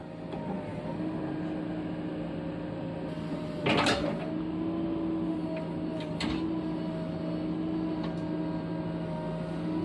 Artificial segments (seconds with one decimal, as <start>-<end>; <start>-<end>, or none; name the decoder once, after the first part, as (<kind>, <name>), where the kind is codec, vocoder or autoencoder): none